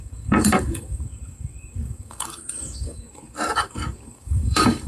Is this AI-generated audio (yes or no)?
yes